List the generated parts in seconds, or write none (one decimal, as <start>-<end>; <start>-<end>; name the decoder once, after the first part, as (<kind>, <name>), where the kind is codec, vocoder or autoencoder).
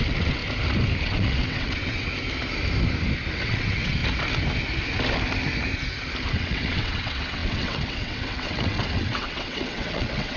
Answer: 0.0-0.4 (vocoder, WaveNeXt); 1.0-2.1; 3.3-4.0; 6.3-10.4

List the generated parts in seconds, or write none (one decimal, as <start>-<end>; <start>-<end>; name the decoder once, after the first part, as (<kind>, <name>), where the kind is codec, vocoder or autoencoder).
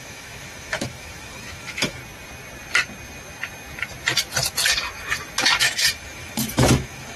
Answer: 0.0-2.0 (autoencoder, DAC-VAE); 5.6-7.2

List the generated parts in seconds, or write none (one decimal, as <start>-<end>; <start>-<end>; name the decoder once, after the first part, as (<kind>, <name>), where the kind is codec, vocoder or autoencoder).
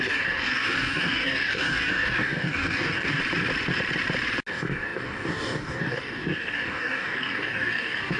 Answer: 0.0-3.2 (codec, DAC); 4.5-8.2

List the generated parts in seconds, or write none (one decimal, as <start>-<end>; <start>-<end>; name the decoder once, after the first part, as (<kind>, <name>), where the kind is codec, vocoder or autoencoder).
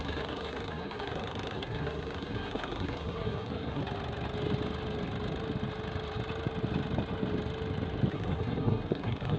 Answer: 0.0-3.8 (codec, SNAC); 8.1-9.4